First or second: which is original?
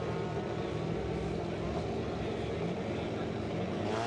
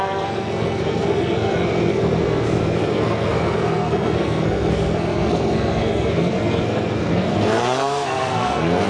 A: first